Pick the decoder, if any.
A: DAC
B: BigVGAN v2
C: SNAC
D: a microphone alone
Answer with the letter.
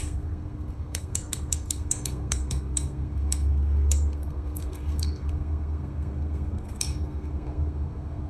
C